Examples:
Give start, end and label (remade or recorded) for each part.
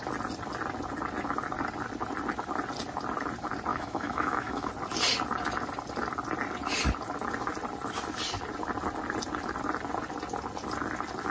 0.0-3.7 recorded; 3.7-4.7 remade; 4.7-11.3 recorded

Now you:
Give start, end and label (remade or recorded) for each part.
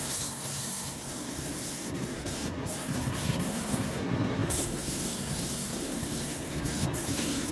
0.0-7.5 remade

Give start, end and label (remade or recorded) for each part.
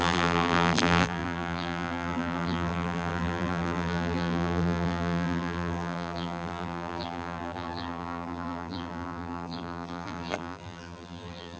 0.0-11.6 remade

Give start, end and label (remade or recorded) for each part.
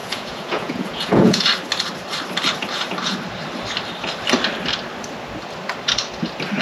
0.0-1.4 remade; 1.4-6.6 recorded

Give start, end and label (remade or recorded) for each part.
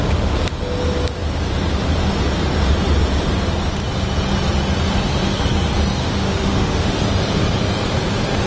0.0-6.0 recorded; 6.0-7.0 remade; 7.0-8.5 recorded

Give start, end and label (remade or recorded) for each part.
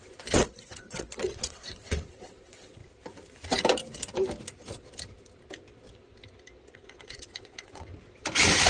0.0-2.8 remade; 2.8-6.7 recorded; 6.7-7.9 remade; 7.9-8.7 recorded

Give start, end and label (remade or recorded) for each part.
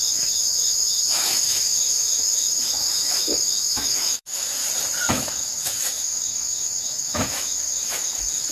0.0-4.6 remade; 4.6-5.1 recorded; 5.1-8.5 remade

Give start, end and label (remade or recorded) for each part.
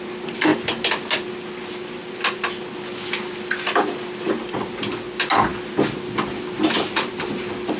0.0-7.8 recorded